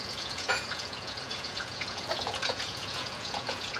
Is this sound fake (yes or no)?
yes